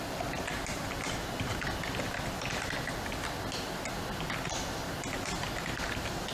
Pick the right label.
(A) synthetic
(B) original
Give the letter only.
B